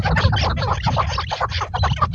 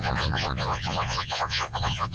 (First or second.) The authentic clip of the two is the first